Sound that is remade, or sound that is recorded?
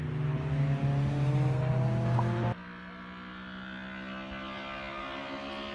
recorded